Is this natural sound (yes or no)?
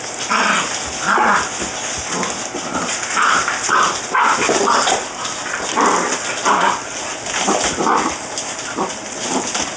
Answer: yes